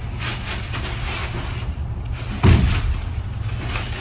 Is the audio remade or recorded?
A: recorded